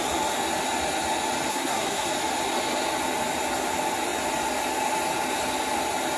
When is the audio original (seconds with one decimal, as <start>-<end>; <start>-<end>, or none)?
0.0-1.5; 2.1-6.2